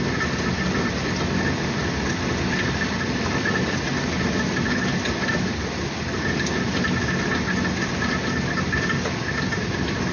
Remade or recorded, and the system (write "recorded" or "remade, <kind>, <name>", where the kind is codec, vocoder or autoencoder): recorded